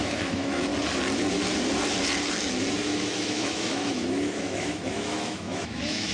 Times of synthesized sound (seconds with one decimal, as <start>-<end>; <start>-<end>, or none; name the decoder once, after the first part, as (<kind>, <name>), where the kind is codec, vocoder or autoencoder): 0.0-0.7 (autoencoder, DAC-VAE); 2.7-6.1